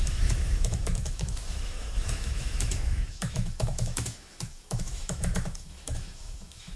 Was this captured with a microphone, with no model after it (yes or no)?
no